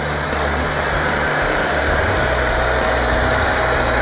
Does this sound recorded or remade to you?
remade